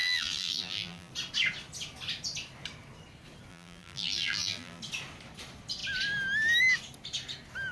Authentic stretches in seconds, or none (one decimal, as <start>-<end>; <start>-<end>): 1.1-3.5; 4.8-7.7